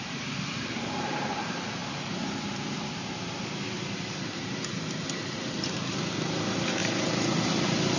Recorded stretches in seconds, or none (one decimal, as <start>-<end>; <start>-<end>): 0.0-1.8; 3.0-8.0